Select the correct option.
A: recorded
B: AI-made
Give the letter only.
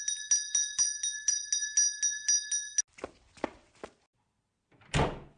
A